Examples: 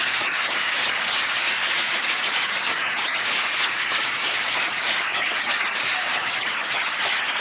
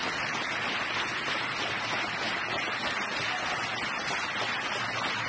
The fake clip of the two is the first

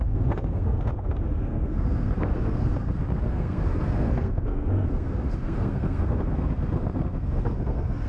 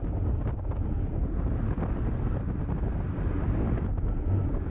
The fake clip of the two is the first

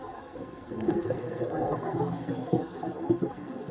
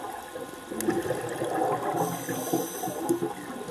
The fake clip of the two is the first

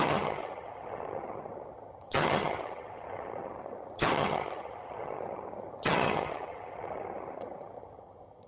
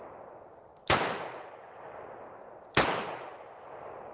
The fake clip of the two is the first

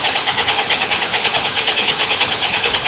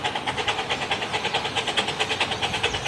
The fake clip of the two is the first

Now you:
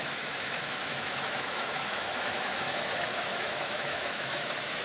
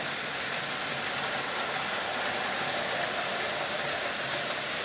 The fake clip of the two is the first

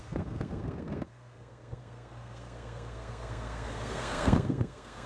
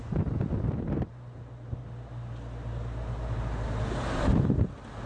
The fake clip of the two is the first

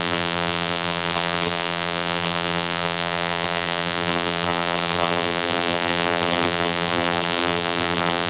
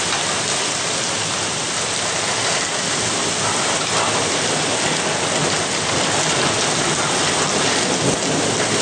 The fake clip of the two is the first